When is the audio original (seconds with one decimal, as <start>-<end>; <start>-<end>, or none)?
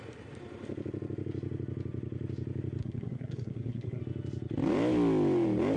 0.0-2.8; 4.0-5.8